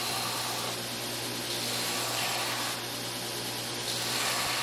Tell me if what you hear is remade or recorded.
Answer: recorded